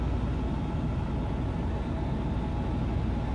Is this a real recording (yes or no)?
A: yes